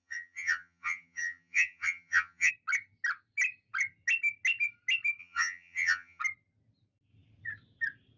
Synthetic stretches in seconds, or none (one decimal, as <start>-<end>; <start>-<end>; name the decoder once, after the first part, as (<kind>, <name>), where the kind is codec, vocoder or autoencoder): 0.0-2.5 (vocoder, HiFi-GAN); 5.2-6.2